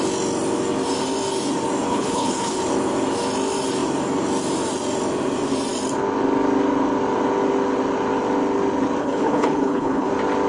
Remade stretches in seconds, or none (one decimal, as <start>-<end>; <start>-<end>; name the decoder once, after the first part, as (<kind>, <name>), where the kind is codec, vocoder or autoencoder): 1.9-2.6 (codec, HILCodec); 9.0-10.1

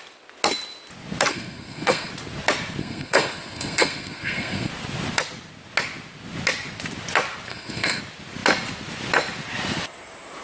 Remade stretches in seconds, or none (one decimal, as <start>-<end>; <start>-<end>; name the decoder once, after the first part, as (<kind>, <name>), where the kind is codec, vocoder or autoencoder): 1.3-2.1 (codec, SNAC); 2.8-4.7; 7.5-8.0

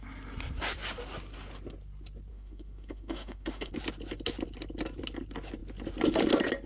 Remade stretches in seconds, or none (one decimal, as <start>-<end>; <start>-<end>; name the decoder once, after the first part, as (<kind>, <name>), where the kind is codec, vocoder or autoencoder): 2.3-3.7 (autoencoder, DAC-VAE)

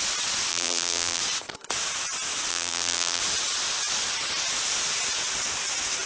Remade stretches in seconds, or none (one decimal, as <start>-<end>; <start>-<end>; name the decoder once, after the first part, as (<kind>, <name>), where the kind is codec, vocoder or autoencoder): 0.5-1.2 (vocoder, BigVGAN v2); 2.5-3.2